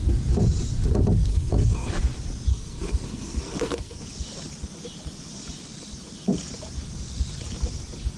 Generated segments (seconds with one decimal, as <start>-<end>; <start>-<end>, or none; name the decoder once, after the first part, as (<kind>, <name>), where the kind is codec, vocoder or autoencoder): 1.3-1.9 (codec, SNAC); 2.5-4.0